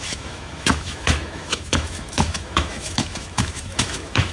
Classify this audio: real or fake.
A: fake